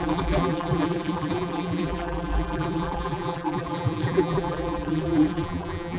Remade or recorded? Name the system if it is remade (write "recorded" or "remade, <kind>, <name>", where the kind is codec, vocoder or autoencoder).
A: remade, vocoder, BigVGAN v2